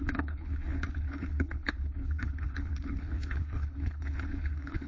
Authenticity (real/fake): fake